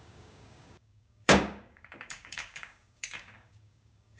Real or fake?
fake